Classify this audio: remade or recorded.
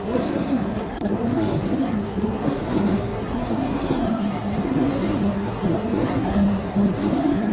remade